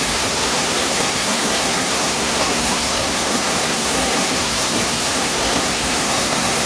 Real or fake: fake